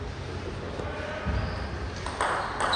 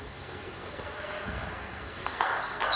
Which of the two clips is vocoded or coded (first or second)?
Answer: second